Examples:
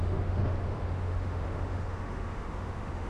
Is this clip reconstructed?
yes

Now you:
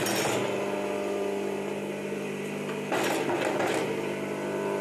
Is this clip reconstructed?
no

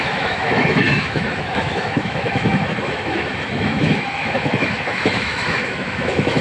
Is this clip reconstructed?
yes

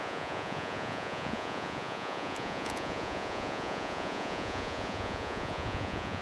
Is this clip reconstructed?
yes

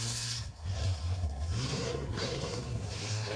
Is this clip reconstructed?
yes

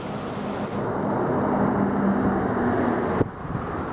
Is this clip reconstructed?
no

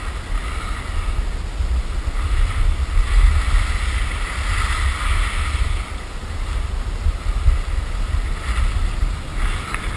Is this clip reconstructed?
no